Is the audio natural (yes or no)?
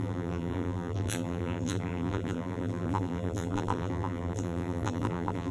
no